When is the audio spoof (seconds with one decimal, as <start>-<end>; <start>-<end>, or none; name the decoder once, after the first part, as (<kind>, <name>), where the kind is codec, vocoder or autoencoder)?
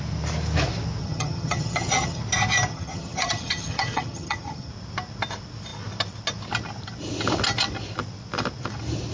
1.0-2.2 (vocoder, HiFi-GAN); 2.7-4.7